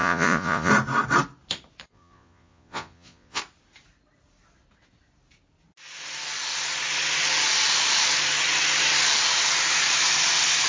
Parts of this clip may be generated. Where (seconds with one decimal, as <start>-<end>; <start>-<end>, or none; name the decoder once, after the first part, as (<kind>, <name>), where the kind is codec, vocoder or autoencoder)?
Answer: 0.0-0.7 (vocoder, Vocos); 1.9-3.4